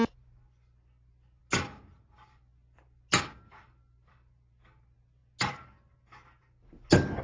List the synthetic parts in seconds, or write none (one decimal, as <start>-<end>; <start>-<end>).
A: none